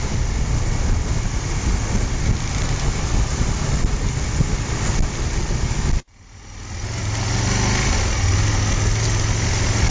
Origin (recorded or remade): recorded